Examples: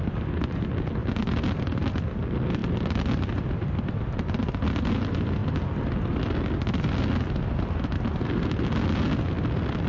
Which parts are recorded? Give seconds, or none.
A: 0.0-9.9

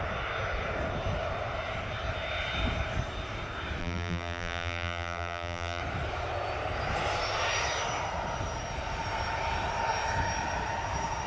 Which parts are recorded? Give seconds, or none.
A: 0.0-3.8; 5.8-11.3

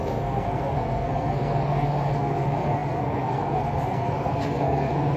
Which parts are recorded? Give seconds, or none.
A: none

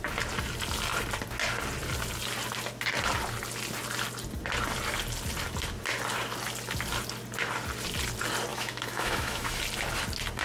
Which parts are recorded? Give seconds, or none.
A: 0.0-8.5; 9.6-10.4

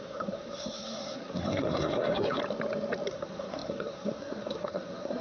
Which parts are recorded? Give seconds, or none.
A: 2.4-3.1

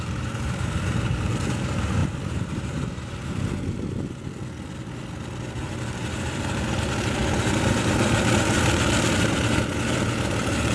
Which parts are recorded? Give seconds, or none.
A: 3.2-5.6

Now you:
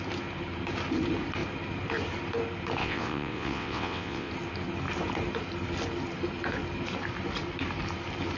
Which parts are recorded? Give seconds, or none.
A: 0.0-2.8; 4.3-8.4